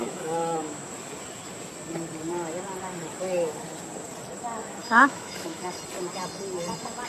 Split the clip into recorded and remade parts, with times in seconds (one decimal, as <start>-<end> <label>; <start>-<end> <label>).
0.0-0.9 remade; 0.9-4.8 recorded; 4.8-5.8 remade; 5.8-7.1 recorded